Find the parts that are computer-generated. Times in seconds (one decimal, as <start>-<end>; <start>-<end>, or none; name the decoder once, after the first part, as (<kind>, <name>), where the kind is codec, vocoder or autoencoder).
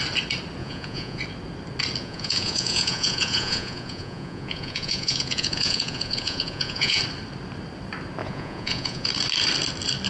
0.6-1.2 (vocoder, Vocos); 2.0-7.0; 8.2-9.1